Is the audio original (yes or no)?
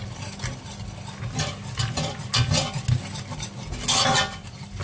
yes